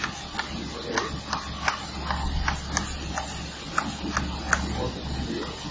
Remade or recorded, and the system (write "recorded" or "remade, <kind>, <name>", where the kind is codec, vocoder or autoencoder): recorded